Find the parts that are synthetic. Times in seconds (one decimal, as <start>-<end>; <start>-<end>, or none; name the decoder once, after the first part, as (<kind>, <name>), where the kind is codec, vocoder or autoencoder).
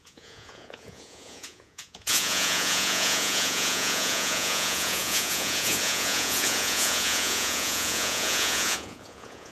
0.0-9.5 (vocoder, Vocos)